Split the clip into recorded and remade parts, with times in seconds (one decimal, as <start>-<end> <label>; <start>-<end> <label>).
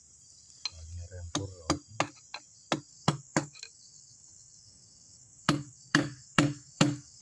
0.0-2.9 recorded; 2.9-7.2 remade